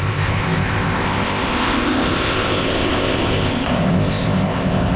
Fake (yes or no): yes